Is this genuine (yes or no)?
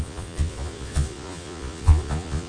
no